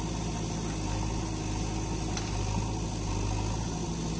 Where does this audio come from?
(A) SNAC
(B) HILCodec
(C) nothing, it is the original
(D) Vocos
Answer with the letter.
C